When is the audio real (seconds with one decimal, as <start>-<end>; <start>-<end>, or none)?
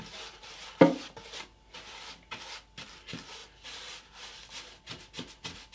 0.0-5.7